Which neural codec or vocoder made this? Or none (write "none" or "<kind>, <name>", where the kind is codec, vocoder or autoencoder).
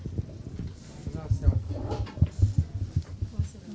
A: none